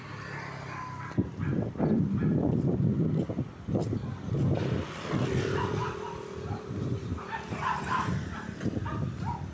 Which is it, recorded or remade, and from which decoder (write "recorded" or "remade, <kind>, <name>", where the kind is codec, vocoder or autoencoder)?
recorded